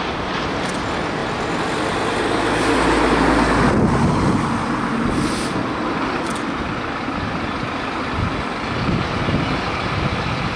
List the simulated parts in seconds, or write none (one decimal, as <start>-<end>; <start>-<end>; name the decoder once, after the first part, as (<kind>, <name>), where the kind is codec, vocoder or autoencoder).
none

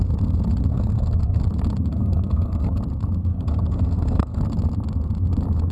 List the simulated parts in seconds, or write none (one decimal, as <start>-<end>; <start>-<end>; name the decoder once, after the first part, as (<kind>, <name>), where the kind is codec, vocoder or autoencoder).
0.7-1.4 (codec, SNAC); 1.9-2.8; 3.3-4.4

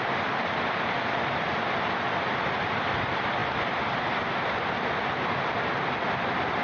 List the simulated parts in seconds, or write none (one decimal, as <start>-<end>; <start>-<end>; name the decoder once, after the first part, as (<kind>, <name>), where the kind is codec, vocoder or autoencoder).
none

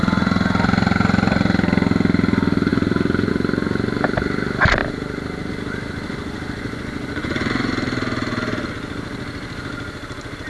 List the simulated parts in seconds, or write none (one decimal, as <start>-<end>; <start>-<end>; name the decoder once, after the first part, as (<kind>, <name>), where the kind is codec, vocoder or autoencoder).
6.1-7.7 (vocoder, Vocos)

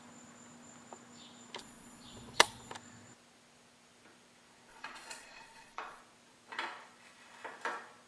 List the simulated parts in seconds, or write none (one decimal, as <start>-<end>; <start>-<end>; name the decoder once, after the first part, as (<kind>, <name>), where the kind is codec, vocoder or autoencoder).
1.6-2.7 (vocoder, Vocos); 4.7-6.0

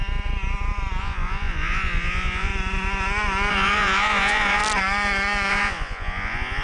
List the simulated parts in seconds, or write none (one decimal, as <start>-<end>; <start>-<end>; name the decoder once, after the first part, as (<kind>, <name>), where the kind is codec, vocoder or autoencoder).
1.0-2.5 (vocoder, Vocos); 3.5-4.6; 5.5-6.6

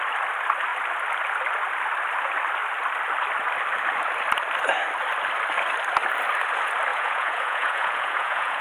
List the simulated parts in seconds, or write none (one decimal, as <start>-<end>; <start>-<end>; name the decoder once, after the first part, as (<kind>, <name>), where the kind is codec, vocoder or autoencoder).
6.9-8.6 (vocoder, Vocos)

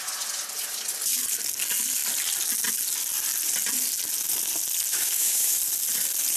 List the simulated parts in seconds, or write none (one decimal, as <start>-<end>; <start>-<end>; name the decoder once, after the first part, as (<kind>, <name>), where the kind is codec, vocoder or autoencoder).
4.9-5.6 (autoencoder, DAC-VAE)